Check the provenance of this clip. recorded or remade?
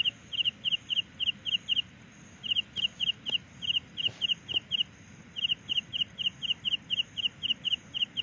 recorded